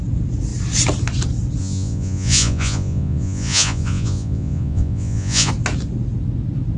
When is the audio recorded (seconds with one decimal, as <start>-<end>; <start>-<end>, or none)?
0.0-1.6; 5.5-6.8